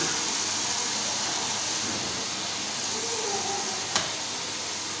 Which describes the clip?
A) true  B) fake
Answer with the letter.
A